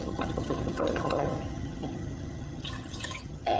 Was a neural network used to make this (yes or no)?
yes